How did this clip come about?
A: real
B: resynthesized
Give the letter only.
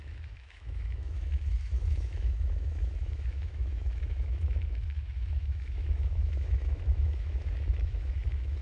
B